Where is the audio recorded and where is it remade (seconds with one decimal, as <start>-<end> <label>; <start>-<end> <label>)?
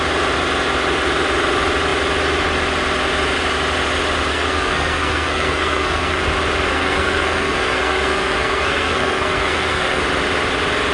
0.0-4.3 recorded; 4.3-6.2 remade; 6.2-6.7 recorded; 6.7-10.0 remade; 10.0-10.9 recorded